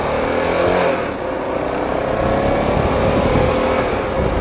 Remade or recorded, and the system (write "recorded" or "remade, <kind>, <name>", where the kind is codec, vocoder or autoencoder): recorded